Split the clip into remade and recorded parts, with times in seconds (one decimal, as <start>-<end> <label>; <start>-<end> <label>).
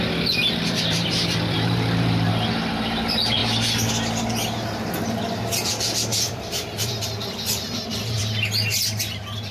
0.0-0.4 recorded; 0.4-2.3 remade; 2.3-6.1 recorded; 6.1-8.2 remade; 8.2-9.5 recorded